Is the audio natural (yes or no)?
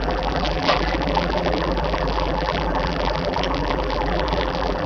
no